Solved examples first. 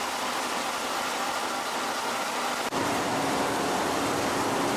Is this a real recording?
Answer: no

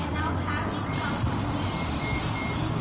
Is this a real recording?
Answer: yes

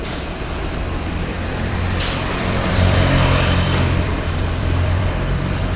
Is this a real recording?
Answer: no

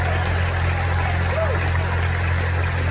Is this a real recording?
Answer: yes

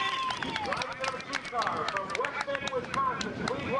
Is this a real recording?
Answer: yes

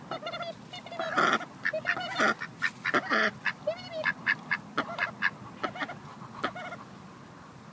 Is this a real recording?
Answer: yes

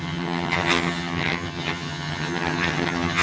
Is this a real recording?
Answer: no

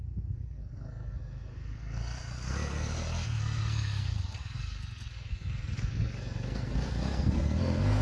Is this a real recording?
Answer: no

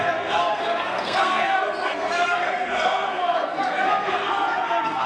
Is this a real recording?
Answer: no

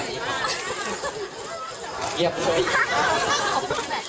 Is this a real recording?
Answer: yes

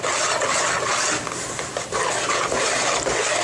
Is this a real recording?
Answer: yes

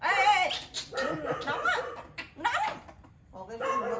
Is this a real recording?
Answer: yes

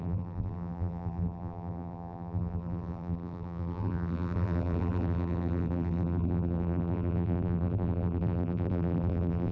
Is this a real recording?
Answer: no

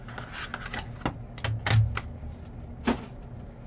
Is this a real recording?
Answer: yes